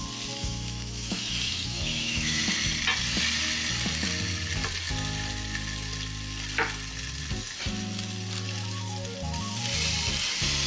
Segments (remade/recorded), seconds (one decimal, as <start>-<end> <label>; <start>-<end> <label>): 0.0-0.4 recorded; 0.4-2.4 remade; 2.4-10.7 recorded

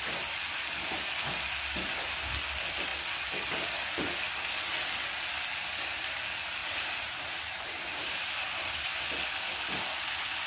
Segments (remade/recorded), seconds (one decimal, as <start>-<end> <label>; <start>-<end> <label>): 0.0-6.6 recorded; 6.6-9.0 remade; 9.0-10.5 recorded